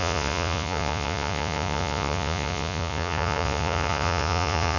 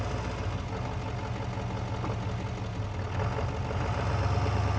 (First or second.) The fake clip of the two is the first